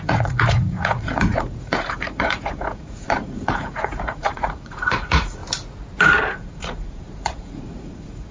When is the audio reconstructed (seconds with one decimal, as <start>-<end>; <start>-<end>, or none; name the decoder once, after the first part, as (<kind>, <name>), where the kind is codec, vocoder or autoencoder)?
0.0-5.4 (vocoder, Vocos); 6.3-8.3